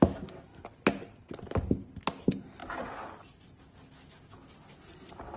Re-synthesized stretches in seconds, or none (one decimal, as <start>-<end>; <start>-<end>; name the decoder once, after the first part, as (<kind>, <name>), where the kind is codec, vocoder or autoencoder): none